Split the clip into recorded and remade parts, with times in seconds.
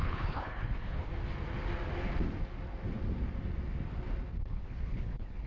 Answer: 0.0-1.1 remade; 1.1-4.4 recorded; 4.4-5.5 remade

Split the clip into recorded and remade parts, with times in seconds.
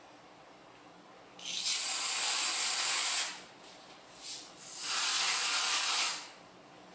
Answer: 0.0-6.9 recorded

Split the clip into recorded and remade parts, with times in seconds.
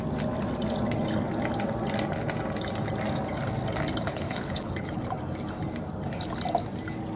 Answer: 0.0-4.1 recorded; 4.1-5.0 remade; 5.0-7.2 recorded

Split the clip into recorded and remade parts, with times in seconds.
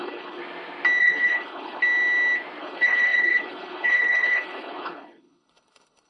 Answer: 0.0-0.4 remade; 0.4-1.0 recorded; 1.0-1.8 remade; 1.8-2.6 recorded; 2.6-6.1 remade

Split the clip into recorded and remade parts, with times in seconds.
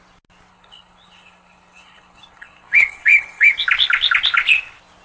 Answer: 0.0-0.5 recorded; 0.5-3.5 remade; 3.5-5.0 recorded